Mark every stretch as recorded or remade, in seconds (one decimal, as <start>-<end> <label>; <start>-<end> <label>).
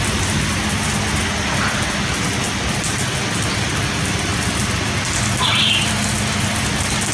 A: 0.0-7.1 recorded